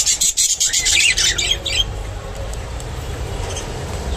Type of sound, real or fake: fake